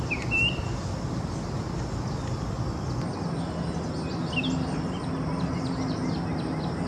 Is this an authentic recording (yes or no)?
yes